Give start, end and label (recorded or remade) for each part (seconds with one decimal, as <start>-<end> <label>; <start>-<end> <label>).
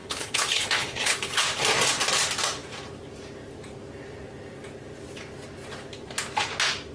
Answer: 0.0-1.4 remade; 1.4-6.9 recorded